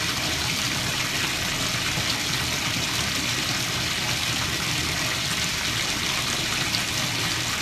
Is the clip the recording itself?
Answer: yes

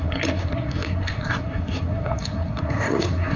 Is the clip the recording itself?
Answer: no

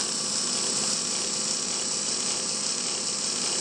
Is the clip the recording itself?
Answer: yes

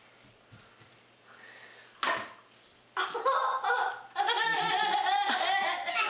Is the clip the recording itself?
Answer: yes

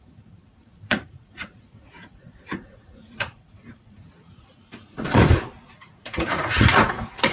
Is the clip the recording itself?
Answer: no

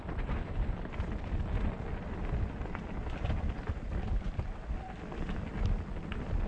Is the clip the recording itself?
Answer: yes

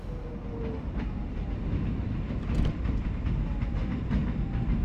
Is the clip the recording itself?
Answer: yes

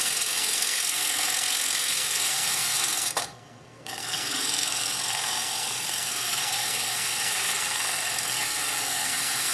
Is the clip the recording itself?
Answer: no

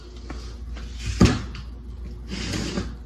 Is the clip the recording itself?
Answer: yes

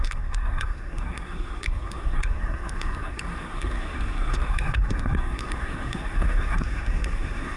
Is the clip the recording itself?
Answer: no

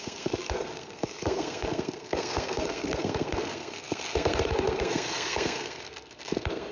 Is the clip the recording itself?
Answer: no